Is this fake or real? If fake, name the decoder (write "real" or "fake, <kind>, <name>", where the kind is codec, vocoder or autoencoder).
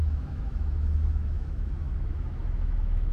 fake, autoencoder, DAC-VAE